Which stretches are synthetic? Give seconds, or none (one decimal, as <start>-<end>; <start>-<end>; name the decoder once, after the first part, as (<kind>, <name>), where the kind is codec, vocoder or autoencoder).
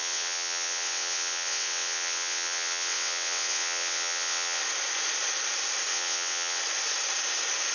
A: 0.0-4.6 (vocoder, WaveNeXt); 5.9-6.6